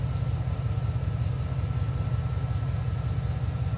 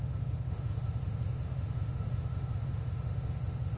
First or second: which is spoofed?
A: second